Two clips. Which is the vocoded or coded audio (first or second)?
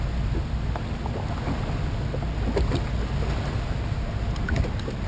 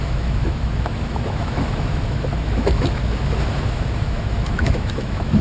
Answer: second